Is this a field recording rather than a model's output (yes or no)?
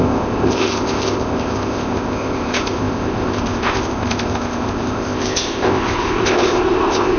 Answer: no